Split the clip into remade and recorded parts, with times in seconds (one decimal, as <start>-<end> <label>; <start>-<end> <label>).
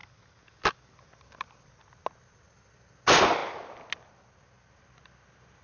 0.0-5.6 recorded